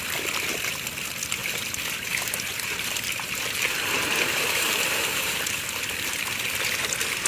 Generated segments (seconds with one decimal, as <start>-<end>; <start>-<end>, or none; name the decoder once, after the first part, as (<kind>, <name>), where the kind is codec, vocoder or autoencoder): 1.4-5.8 (vocoder, BigVGAN v2)

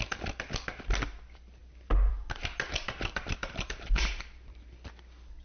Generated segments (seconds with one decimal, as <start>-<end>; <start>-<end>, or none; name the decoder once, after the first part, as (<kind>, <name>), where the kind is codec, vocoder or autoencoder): 2.7-4.2 (vocoder, BigVGAN v2)

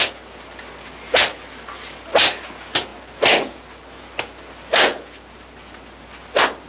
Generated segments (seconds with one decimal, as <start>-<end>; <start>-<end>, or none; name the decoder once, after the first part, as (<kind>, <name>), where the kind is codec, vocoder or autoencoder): none

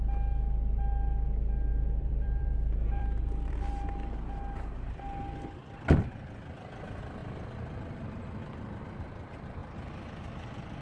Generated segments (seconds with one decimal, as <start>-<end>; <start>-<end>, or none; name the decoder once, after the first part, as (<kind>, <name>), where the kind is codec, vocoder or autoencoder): 1.7-3.7 (vocoder, BigVGAN v2); 7.2-8.8

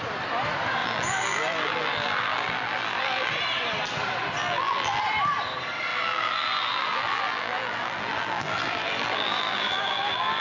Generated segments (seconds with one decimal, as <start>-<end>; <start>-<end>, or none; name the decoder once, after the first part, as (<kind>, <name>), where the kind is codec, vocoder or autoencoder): 0.8-3.3 (vocoder, BigVGAN v2); 4.4-5.0; 5.9-10.4